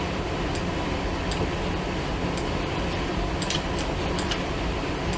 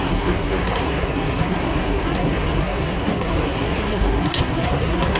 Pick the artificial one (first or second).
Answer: second